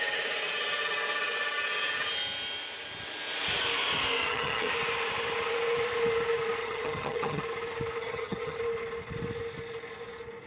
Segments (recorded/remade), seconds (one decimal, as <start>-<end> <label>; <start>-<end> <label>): 0.0-4.2 recorded; 4.2-4.7 remade; 4.7-6.6 recorded; 6.6-7.4 remade; 7.4-8.0 recorded; 8.0-8.6 remade; 8.6-10.5 recorded